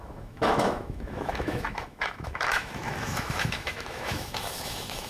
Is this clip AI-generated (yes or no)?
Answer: yes